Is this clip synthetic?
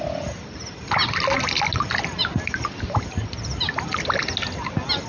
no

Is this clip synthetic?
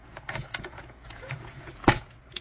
yes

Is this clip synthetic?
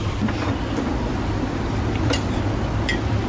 no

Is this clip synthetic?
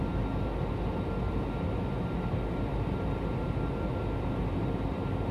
no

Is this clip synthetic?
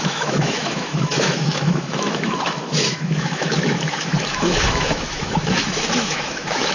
yes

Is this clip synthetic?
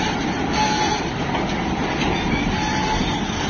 no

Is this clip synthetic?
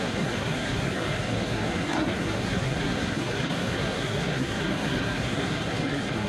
yes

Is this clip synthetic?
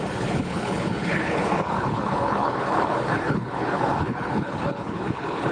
yes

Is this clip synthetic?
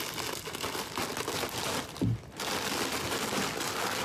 no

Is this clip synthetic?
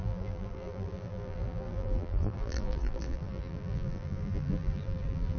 yes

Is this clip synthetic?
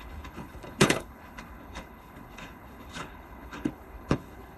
yes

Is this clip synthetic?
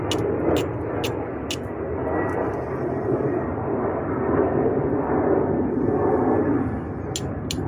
no